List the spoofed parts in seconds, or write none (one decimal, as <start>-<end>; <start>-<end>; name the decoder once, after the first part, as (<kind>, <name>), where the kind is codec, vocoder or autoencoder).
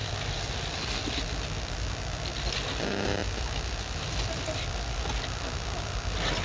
none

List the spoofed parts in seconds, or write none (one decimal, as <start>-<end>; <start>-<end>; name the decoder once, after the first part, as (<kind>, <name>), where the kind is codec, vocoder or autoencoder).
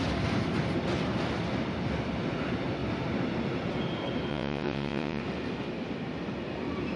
4.3-5.2 (vocoder, WaveNeXt)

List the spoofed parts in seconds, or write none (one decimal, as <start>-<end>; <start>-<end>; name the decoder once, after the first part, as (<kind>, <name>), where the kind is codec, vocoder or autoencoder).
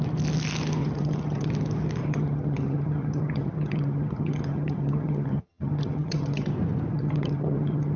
0.8-1.5 (vocoder, HiFi-GAN); 2.0-6.5; 6.9-8.0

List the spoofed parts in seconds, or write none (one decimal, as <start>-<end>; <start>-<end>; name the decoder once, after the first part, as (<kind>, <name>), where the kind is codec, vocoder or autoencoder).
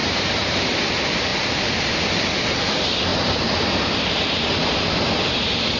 0.0-0.8 (vocoder, BigVGAN v2); 1.3-1.8; 3.1-4.8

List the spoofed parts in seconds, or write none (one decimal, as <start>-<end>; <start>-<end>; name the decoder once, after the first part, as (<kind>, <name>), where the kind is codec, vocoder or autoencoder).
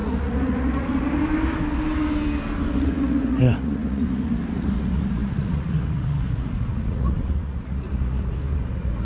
0.0-1.2 (vocoder, Vocos); 2.7-9.1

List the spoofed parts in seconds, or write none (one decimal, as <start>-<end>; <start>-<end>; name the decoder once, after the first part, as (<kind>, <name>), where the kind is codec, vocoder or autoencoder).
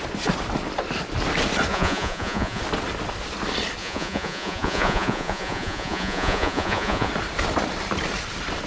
1.7-2.6 (vocoder, Vocos); 3.8-7.1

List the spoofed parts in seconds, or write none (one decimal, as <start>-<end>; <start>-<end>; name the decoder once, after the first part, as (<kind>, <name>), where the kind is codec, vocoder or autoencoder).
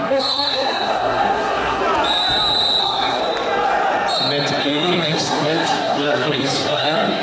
0.0-1.8 (codec, SNAC); 2.8-3.2; 4.6-7.2